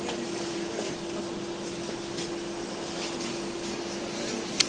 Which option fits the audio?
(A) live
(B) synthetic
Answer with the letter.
A